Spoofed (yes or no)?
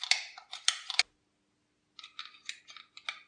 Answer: no